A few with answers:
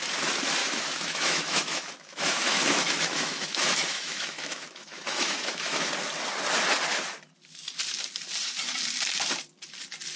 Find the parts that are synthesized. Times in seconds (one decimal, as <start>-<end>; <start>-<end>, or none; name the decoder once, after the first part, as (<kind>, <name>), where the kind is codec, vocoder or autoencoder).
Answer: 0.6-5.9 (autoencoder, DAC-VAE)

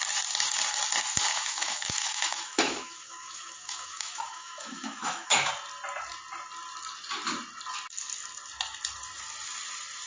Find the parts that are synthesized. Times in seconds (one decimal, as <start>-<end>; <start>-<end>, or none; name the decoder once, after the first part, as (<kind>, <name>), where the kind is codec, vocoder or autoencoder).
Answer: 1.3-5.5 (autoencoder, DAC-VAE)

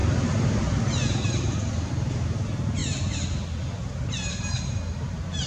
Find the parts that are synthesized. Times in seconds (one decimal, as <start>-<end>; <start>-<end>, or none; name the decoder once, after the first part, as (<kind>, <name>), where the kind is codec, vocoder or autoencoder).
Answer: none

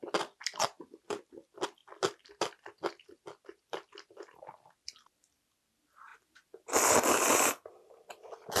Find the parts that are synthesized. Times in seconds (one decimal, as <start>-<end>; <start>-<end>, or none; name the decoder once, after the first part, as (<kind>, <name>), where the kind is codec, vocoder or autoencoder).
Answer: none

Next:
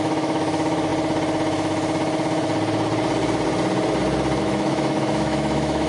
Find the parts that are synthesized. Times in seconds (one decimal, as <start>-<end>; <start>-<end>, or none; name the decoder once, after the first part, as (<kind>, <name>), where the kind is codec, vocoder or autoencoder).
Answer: 0.0-0.9 (autoencoder, DAC-VAE); 4.4-5.9

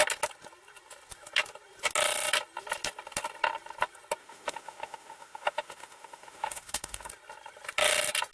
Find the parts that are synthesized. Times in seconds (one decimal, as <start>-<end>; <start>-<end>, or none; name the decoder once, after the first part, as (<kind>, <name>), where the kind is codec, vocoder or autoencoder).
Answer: 4.2-7.1 (autoencoder, DAC-VAE)

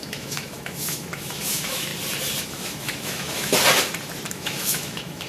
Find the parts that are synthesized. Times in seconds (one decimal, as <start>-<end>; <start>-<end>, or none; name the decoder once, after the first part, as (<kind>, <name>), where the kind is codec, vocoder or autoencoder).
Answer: 0.0-1.9 (autoencoder, DAC-VAE); 2.4-3.5; 4.3-5.3